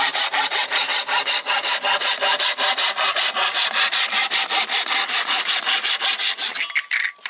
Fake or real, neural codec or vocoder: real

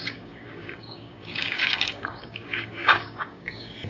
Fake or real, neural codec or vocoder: fake, codec, DAC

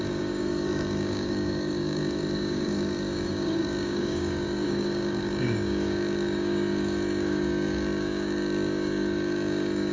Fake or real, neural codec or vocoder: fake, codec, DAC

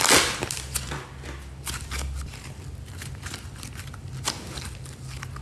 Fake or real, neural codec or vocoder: real